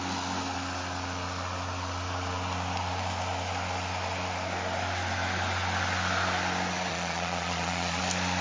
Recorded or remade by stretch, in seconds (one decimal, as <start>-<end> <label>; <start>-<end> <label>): 0.0-6.9 recorded; 6.9-8.0 remade; 8.0-8.4 recorded